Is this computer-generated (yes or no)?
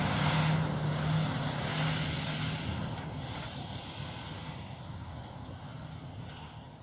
no